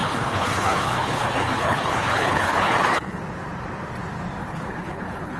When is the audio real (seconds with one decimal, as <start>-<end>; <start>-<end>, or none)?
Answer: 3.2-4.4